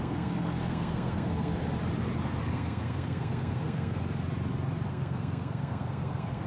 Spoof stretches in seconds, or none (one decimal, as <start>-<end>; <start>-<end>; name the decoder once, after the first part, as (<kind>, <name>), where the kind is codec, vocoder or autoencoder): 0.0-1.6 (codec, SNAC); 2.5-4.0; 4.9-6.5

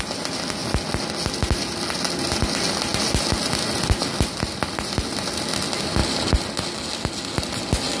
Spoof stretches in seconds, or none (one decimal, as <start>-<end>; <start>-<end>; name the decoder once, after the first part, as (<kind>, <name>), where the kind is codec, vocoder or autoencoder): none

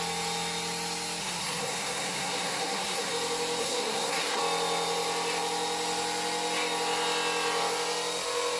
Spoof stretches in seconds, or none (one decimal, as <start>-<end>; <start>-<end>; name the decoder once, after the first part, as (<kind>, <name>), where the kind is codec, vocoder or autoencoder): 1.2-3.1 (codec, SNAC); 3.6-4.4

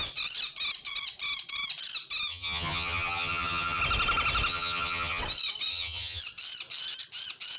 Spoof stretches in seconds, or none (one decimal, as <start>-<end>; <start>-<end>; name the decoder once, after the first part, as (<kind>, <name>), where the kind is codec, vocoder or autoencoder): 2.3-3.8 (vocoder, HiFi-GAN); 4.5-5.2; 5.7-6.2

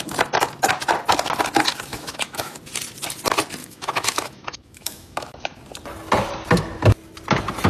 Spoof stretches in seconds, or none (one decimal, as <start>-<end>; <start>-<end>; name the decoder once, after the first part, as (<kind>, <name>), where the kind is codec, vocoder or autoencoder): 1.9-2.6 (autoencoder, DAC-VAE); 3.6-5.6

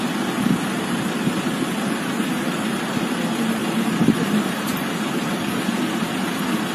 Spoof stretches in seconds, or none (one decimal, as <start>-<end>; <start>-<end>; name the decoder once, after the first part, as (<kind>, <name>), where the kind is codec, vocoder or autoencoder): 3.6-5.3 (vocoder, BigVGAN v2)

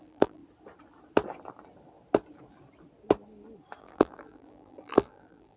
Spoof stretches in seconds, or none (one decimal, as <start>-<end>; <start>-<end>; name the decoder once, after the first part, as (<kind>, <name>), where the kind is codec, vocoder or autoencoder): 0.0-0.4 (vocoder, BigVGAN v2); 3.8-5.6

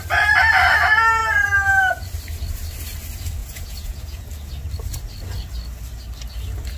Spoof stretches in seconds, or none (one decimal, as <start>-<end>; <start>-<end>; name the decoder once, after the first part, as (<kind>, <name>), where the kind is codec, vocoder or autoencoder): 3.4-4.2 (vocoder, Vocos)